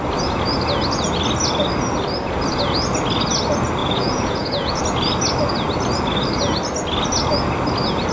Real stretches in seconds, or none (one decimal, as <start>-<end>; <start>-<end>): 0.0-3.8; 4.8-8.1